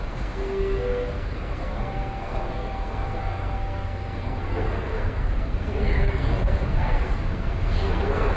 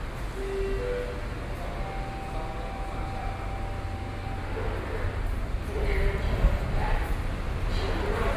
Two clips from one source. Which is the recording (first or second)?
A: second